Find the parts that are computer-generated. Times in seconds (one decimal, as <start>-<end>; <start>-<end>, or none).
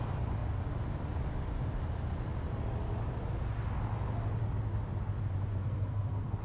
5.5-6.4